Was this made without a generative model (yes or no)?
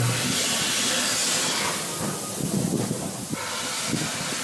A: yes